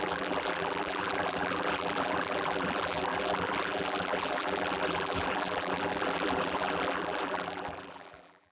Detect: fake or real fake